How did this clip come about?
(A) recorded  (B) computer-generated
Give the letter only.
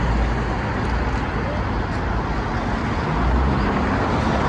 A